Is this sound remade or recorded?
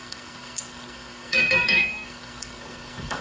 remade